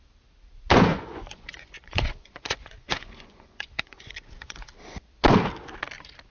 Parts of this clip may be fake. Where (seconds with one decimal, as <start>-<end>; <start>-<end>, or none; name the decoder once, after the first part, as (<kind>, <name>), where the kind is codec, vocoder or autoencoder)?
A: 0.9-4.7 (vocoder, Vocos)